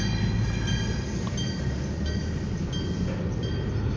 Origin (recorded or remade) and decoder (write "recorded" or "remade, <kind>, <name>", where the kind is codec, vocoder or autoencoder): recorded